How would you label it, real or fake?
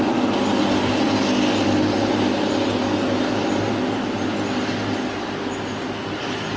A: real